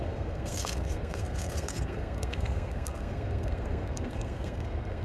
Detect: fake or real fake